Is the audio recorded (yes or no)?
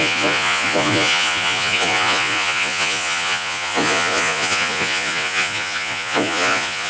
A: no